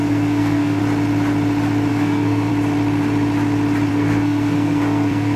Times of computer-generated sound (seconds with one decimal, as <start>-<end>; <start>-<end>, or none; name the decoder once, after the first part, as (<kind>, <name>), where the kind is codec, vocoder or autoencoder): 0.0-0.8 (codec, SNAC); 1.9-2.5; 3.9-5.4